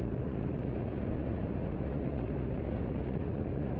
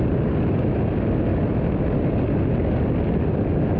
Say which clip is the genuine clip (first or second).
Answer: second